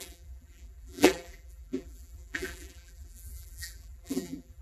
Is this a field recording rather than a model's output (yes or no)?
no